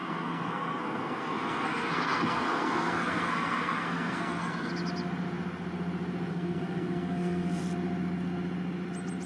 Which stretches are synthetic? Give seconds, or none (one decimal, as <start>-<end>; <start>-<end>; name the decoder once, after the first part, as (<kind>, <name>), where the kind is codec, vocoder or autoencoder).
0.0-4.7 (codec, SNAC); 6.3-7.6